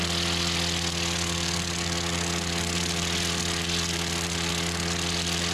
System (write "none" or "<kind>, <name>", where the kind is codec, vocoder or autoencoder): none